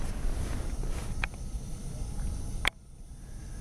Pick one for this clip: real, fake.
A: real